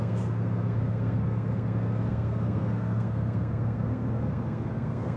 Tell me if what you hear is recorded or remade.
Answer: remade